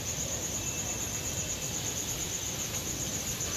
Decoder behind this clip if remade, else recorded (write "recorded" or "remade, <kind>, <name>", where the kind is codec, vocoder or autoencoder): remade, vocoder, BigVGAN v2